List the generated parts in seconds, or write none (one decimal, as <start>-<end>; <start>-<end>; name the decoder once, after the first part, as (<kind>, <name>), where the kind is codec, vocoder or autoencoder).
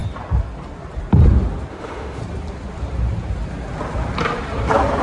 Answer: 1.7-2.2 (autoencoder, DAC-VAE)